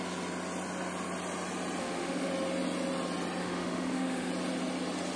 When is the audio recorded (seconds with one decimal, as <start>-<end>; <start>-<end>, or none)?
0.0-1.8; 2.3-3.4; 4.3-5.2